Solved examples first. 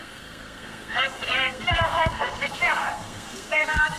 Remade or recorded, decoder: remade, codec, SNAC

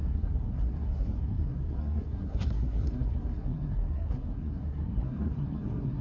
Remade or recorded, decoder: remade, codec, SNAC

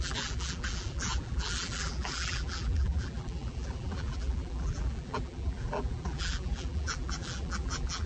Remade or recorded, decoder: remade, vocoder, BigVGAN v2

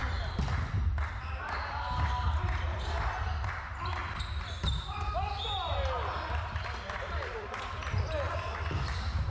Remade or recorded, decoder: recorded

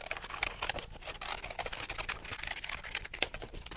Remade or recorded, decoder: recorded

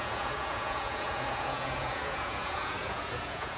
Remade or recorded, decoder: remade, vocoder, Vocos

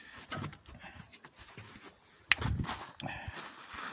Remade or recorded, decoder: recorded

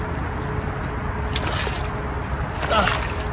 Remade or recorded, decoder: recorded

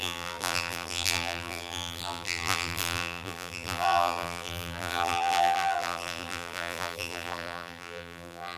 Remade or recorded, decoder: remade, vocoder, BigVGAN v2